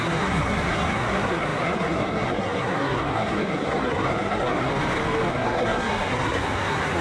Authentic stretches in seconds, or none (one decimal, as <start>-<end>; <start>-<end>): 4.7-5.3